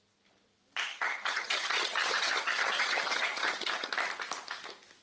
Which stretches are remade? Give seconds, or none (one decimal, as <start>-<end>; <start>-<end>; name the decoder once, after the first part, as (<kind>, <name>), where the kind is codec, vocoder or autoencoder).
0.9-3.9 (vocoder, HiFi-GAN)